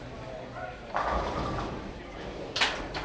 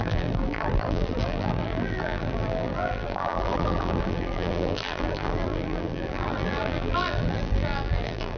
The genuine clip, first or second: first